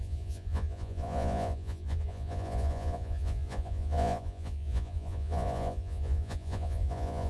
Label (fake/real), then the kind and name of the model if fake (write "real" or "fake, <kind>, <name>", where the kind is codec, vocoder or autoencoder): fake, vocoder, Vocos